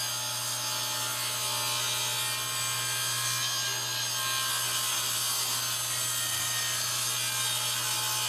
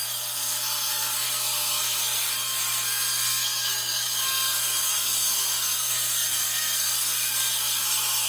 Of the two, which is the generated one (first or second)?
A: second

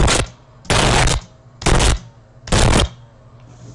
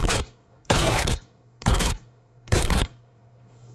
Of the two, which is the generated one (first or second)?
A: second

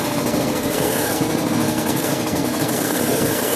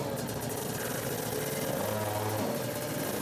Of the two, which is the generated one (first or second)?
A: first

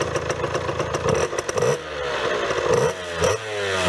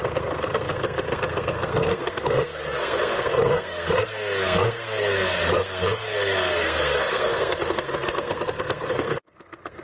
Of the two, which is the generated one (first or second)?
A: second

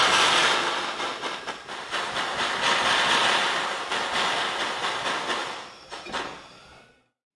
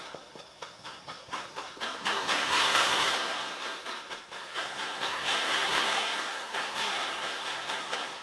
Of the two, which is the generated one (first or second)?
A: second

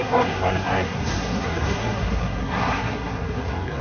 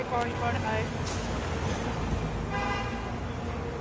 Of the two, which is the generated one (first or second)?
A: first